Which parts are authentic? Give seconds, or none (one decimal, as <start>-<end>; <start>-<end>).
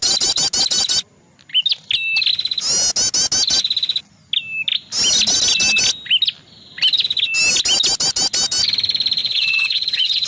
0.0-9.2